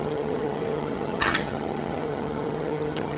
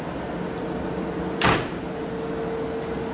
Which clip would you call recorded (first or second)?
second